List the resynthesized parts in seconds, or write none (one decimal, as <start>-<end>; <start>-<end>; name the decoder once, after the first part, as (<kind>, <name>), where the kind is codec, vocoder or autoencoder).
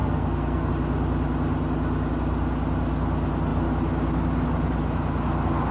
0.0-0.7 (codec, SNAC)